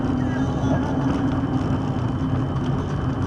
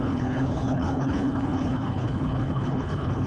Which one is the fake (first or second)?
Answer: second